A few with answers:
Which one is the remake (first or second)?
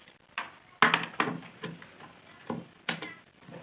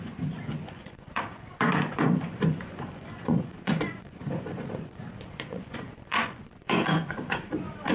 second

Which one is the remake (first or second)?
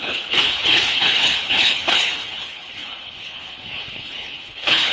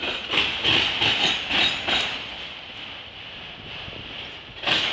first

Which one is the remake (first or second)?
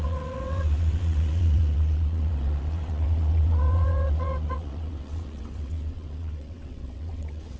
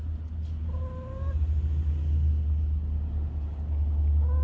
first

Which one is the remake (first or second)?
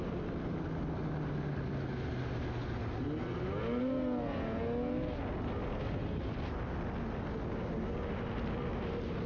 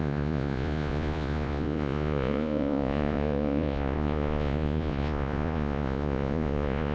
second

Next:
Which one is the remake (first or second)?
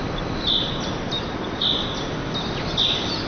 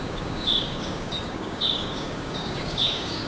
second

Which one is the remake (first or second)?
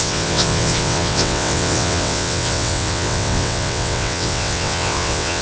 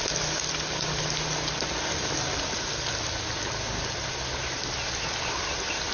first